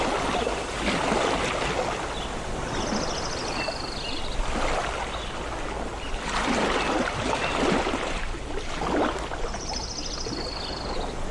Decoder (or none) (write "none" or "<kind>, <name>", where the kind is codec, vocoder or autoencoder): none